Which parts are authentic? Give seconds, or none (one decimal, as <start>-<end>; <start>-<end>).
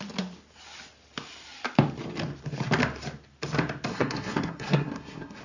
0.0-3.9